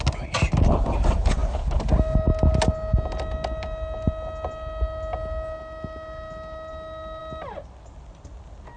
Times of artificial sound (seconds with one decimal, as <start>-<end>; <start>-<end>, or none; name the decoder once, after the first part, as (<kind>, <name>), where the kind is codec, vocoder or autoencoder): none

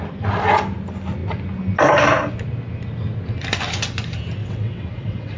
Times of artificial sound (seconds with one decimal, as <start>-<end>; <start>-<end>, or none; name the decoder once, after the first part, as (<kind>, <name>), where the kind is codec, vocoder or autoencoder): 4.4-5.4 (vocoder, WaveNeXt)

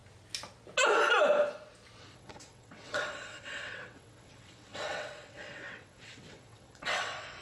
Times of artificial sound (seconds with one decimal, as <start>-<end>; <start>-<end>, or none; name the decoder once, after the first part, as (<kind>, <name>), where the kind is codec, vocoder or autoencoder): 2.0-7.4 (vocoder, WaveNeXt)

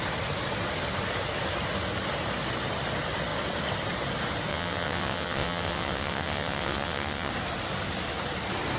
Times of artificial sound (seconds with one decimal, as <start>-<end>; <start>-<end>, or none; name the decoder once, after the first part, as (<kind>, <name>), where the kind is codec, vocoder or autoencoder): 4.5-7.3 (vocoder, WaveNeXt)